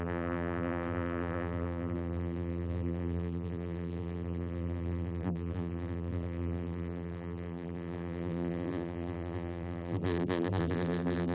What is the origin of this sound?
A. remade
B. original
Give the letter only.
A